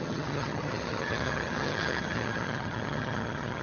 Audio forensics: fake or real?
fake